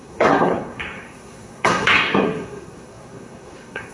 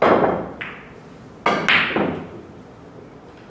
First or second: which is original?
second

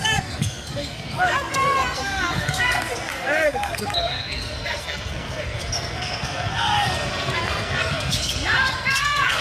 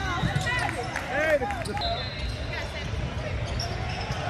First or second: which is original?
second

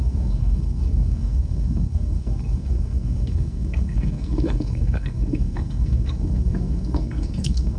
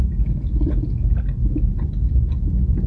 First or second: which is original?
second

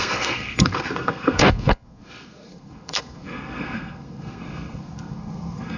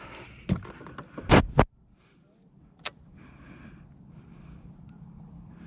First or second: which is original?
second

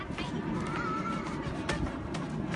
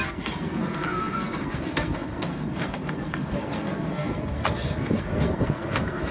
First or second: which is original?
first